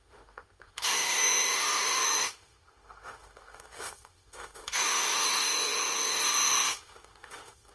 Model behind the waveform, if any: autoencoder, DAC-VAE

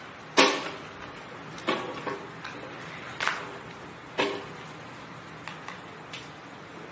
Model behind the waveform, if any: none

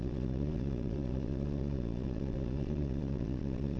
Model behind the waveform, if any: vocoder, Vocos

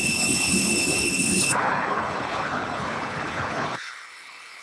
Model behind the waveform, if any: codec, HILCodec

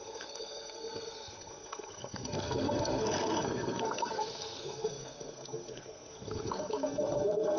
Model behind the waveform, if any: codec, SNAC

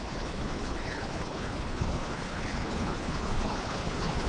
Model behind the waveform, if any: codec, HILCodec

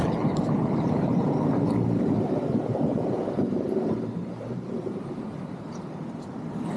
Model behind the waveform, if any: vocoder, BigVGAN v2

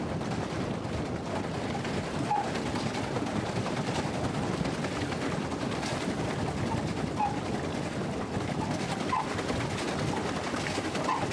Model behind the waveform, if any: none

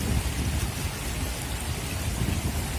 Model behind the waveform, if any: none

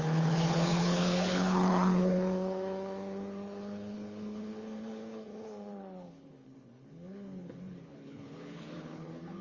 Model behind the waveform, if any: codec, HILCodec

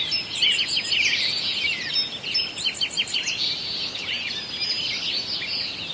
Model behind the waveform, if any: none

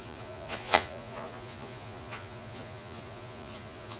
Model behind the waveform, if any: vocoder, Vocos